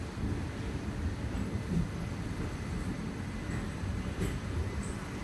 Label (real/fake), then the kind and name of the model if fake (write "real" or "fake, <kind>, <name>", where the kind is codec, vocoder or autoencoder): real